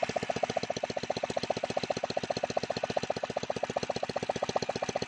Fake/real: real